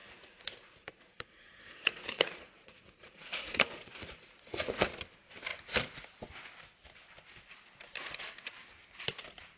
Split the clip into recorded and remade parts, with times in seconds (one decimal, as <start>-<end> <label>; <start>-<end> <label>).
0.0-4.9 remade; 4.9-9.6 recorded